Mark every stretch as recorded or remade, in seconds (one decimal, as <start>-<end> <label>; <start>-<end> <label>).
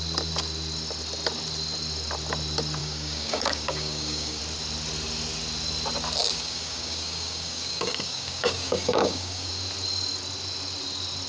0.0-2.8 recorded; 2.8-4.4 remade; 4.4-6.2 recorded; 6.2-9.5 remade; 9.5-11.3 recorded